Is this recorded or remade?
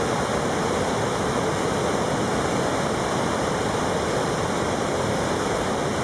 recorded